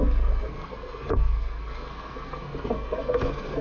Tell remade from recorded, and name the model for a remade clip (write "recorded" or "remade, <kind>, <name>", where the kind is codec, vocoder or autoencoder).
remade, codec, SNAC